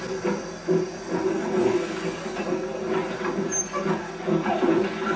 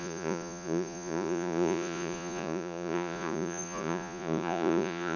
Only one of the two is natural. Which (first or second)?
first